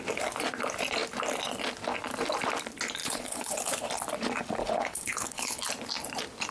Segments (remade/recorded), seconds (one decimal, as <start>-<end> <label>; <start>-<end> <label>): 0.0-3.0 recorded; 3.0-3.9 remade; 3.9-4.6 recorded; 4.6-5.6 remade; 5.6-6.5 recorded